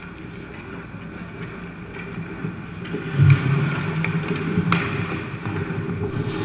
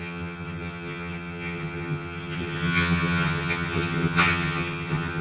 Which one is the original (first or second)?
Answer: first